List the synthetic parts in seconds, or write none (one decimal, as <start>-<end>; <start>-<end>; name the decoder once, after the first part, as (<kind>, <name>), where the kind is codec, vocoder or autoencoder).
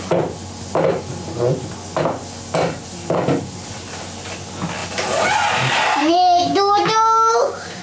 6.0-7.8 (codec, DAC)